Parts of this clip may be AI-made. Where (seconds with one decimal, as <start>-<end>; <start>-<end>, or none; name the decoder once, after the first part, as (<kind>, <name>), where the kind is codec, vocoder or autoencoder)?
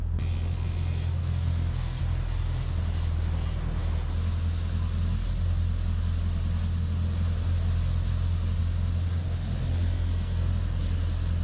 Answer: 1.2-2.0 (codec, SNAC); 9.7-10.5